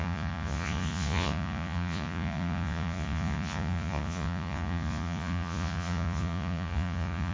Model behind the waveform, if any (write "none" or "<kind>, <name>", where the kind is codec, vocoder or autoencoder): vocoder, Vocos